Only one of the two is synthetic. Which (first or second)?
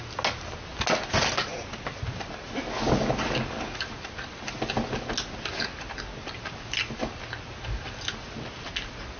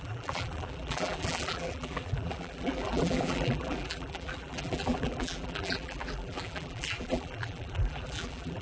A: second